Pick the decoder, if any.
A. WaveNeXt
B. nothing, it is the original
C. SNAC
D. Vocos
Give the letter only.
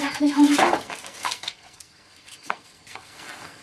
C